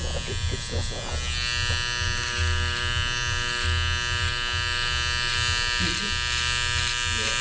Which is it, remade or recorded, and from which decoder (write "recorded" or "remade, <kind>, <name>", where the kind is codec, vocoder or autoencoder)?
recorded